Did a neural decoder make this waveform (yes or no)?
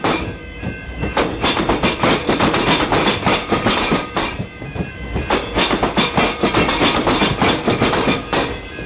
no